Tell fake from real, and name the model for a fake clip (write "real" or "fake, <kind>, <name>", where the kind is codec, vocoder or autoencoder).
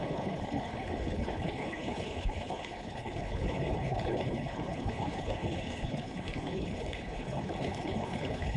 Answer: fake, codec, HILCodec